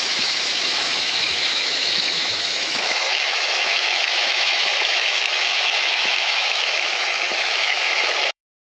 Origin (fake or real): fake